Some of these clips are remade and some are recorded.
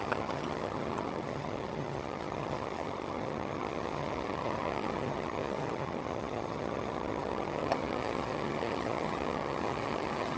remade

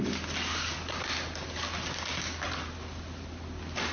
recorded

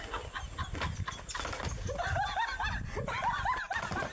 recorded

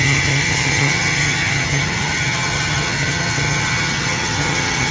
remade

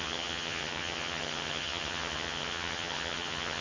remade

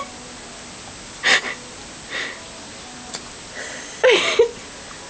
recorded